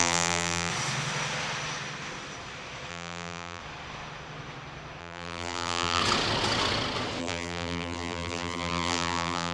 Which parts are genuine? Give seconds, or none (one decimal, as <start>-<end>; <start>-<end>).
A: 0.7-2.9; 3.6-5.0; 6.0-7.2